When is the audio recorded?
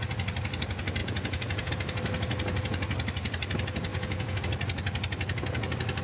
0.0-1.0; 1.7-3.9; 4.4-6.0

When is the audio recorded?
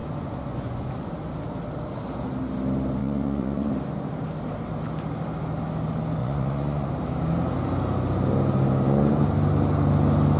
1.1-3.0; 3.7-6.2; 6.9-10.4